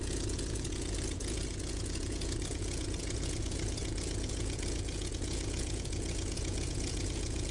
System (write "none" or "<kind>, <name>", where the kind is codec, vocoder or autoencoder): vocoder, Vocos